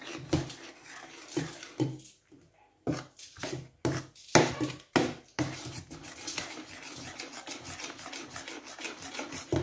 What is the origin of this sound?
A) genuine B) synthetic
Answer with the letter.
A